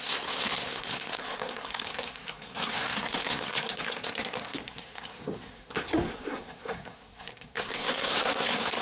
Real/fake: fake